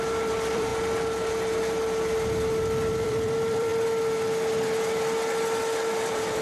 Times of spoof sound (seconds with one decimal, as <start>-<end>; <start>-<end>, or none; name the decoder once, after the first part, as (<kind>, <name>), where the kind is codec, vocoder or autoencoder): 0.0-0.7 (vocoder, BigVGAN v2); 2.9-3.7; 6.0-6.4